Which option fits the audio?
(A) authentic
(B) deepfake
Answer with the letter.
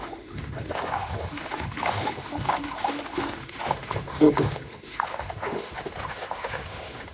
B